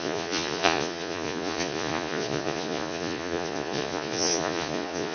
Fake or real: fake